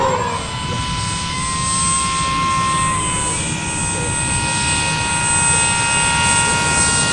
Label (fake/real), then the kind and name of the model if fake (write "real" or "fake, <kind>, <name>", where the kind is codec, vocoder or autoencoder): real